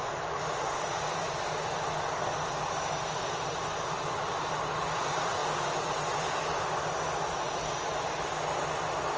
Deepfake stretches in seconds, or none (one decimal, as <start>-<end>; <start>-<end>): none